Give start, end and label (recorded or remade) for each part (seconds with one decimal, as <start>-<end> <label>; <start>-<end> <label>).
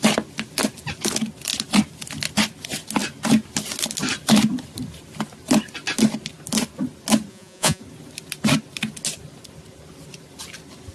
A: 0.0-7.3 recorded; 7.3-7.8 remade; 7.8-10.9 recorded